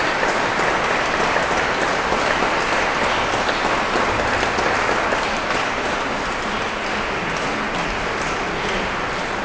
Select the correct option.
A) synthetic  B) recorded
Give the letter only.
B